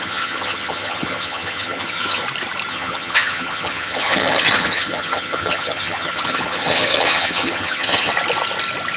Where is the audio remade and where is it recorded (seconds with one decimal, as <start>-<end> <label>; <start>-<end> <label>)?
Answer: 0.0-2.2 remade; 2.2-2.7 recorded; 2.7-8.1 remade; 8.1-9.0 recorded